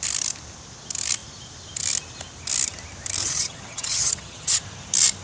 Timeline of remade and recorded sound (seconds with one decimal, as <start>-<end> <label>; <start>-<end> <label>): 0.0-3.2 recorded; 3.2-4.6 remade; 4.6-5.2 recorded